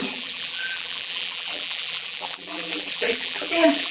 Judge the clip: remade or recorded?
remade